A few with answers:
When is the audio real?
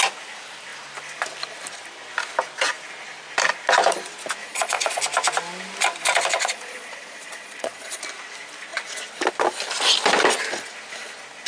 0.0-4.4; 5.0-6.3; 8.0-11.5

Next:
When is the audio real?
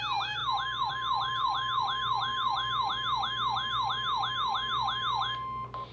0.0-5.9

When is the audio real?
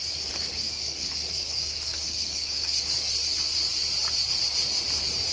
3.1-5.3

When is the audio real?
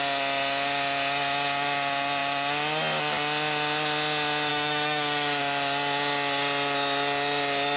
0.0-4.5; 5.4-7.8